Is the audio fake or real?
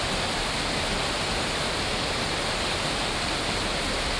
real